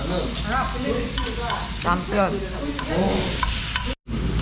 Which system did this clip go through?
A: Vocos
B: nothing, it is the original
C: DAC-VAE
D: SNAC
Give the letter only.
B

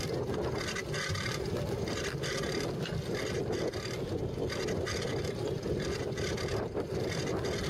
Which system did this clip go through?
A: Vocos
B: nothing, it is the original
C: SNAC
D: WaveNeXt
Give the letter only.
B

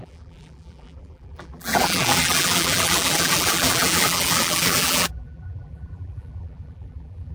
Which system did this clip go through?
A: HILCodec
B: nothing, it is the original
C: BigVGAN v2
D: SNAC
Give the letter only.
C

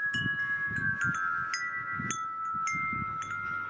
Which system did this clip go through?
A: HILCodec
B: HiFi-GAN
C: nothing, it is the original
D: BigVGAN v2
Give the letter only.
C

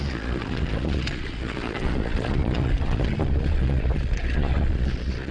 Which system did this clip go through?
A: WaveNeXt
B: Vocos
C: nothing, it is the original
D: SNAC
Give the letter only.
B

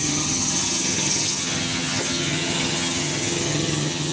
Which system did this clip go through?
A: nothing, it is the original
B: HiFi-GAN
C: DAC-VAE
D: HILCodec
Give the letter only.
B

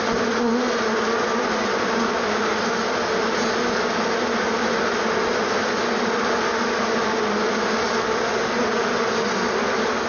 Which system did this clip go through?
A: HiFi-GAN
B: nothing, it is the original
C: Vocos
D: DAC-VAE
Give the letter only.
B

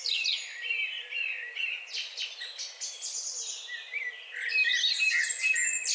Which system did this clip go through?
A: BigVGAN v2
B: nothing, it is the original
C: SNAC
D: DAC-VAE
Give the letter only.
B